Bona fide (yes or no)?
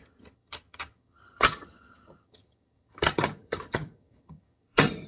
no